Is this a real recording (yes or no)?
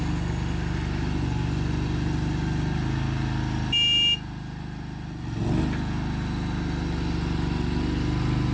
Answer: yes